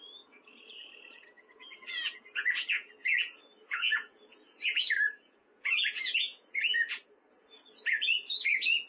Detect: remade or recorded remade